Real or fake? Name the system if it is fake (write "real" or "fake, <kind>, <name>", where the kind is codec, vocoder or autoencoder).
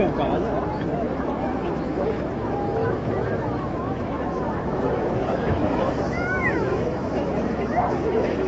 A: fake, autoencoder, DAC-VAE